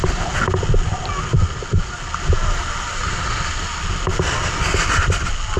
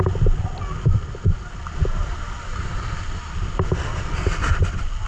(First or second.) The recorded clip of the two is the first